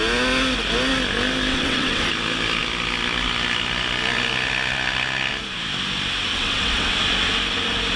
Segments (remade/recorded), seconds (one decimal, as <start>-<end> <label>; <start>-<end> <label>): 0.0-1.5 recorded; 1.5-2.1 remade; 2.1-6.3 recorded; 6.3-6.9 remade; 6.9-8.0 recorded